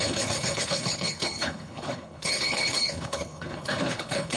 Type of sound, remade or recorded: remade